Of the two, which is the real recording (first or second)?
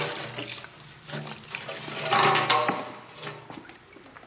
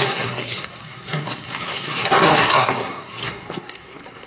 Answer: first